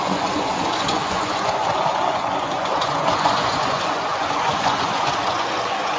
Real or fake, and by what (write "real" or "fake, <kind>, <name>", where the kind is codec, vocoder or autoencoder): fake, vocoder, Vocos